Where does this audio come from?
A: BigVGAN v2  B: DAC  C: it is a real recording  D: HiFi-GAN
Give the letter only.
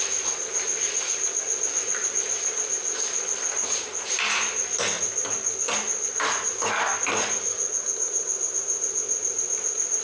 C